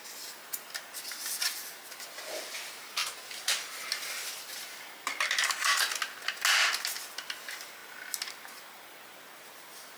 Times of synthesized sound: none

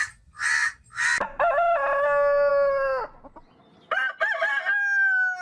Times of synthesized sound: none

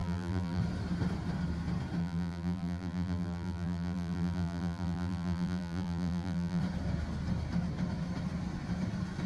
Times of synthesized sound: 0.0-0.6 (vocoder, BigVGAN v2); 2.0-6.6

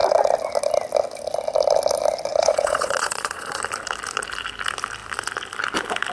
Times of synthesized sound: 2.3-3.6 (vocoder, Vocos)

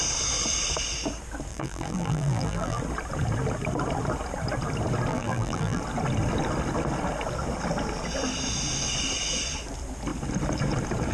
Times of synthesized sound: 1.5-2.8 (vocoder, BigVGAN v2); 5.1-5.8